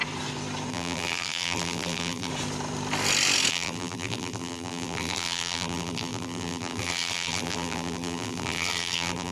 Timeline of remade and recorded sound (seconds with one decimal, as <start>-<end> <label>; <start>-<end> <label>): 0.0-0.7 recorded; 0.7-2.3 remade; 2.3-3.5 recorded; 3.5-9.3 remade